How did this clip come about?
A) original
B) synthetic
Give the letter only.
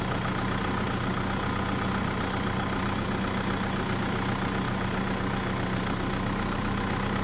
A